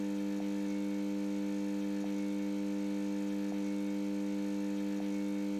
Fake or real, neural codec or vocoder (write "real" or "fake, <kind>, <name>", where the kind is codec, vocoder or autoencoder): real